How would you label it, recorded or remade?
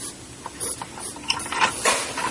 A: recorded